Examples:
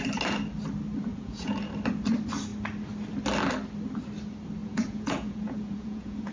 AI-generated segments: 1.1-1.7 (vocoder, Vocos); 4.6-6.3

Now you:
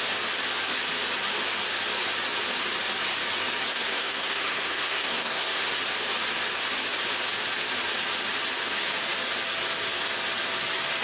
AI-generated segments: 3.7-5.7 (codec, SNAC)

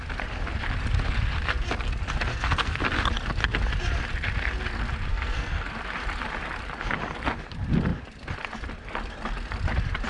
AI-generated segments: 2.3-2.8 (codec, SNAC); 5.1-5.7